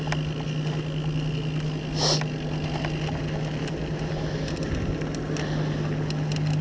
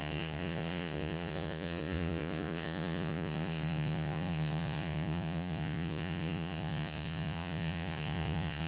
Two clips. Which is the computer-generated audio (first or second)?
second